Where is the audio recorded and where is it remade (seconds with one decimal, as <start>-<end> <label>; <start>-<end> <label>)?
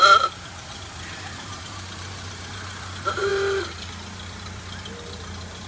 0.0-3.3 remade; 3.3-5.7 recorded